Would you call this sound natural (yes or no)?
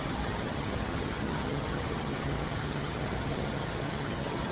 no